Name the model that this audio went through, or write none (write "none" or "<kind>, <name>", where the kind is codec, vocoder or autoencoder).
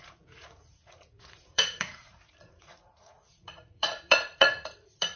vocoder, Vocos